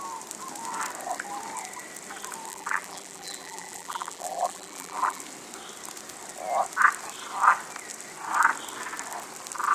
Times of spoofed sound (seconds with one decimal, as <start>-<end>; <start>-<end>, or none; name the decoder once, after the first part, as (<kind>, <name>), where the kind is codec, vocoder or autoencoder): 2.5-5.2 (vocoder, BigVGAN v2)

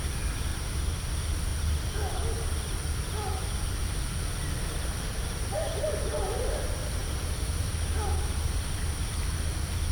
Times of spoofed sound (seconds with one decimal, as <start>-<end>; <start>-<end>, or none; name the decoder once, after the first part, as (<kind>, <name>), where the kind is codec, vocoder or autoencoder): 0.5-1.1 (vocoder, BigVGAN v2); 7.0-9.1

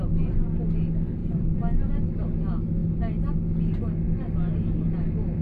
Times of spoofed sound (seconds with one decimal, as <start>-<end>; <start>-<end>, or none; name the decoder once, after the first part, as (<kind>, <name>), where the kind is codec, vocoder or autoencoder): 1.2-1.9 (vocoder, BigVGAN v2)

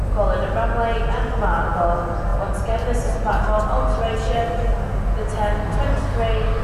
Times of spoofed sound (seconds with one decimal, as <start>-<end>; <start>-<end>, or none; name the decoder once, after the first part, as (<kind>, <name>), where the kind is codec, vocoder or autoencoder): none

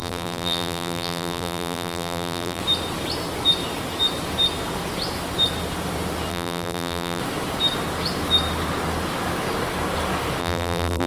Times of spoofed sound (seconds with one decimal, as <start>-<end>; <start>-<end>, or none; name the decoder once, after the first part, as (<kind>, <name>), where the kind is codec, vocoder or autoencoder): 0.0-2.6 (vocoder, BigVGAN v2); 6.3-7.2; 10.4-11.1

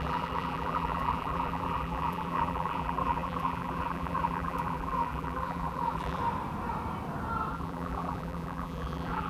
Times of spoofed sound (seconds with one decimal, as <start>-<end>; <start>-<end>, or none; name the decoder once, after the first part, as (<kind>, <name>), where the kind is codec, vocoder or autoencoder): 0.0-6.2 (vocoder, BigVGAN v2); 7.5-9.3

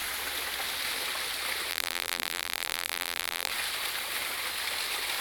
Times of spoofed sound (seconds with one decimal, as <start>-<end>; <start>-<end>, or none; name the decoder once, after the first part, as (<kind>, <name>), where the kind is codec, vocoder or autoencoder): 1.7-3.5 (vocoder, BigVGAN v2)

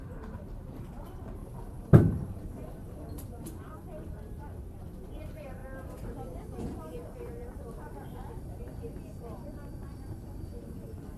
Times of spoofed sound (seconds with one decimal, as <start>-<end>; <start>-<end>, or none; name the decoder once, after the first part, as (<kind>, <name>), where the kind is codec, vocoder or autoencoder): 0.0-5.6 (vocoder, BigVGAN v2); 6.8-11.2